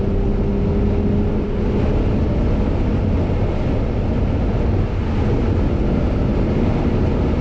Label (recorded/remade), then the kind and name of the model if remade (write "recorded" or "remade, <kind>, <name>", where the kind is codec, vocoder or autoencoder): recorded